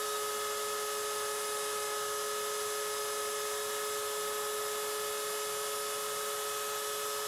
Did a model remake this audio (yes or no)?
no